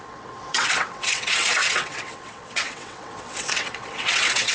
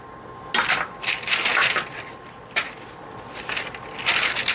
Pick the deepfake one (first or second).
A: first